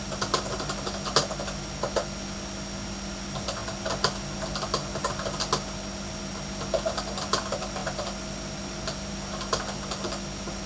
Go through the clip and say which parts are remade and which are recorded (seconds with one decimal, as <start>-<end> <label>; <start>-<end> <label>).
0.0-10.7 recorded